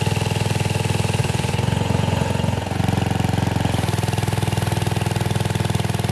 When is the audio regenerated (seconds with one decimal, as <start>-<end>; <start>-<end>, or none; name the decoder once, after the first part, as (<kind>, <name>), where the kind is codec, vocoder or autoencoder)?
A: 1.2-2.8 (vocoder, Vocos)